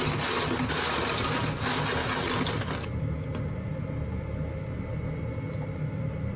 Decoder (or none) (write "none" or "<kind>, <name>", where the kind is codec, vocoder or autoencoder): none